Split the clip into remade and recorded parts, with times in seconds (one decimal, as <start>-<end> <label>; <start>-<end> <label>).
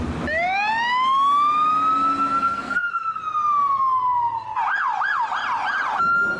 0.0-2.4 recorded; 2.4-3.2 remade; 3.2-6.4 recorded